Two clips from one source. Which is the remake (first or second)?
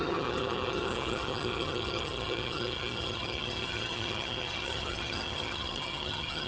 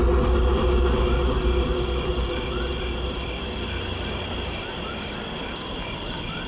first